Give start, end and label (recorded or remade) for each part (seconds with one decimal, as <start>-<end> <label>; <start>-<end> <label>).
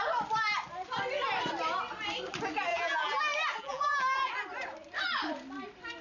0.0-2.7 recorded; 2.7-3.2 remade; 3.2-3.6 recorded; 3.6-4.3 remade; 4.3-6.0 recorded